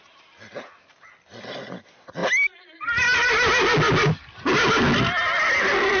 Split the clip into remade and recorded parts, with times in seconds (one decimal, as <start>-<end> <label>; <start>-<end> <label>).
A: 0.0-6.0 recorded